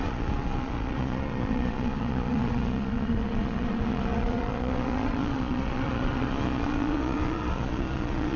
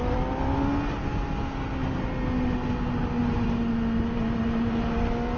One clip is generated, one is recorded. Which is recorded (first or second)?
second